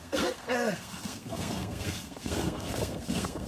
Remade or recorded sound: remade